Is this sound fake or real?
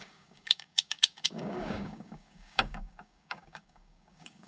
fake